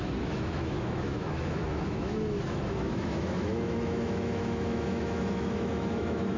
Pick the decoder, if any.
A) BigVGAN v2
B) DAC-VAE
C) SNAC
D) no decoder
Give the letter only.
B